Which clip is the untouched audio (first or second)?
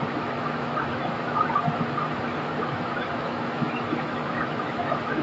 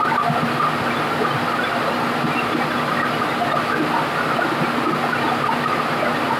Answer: second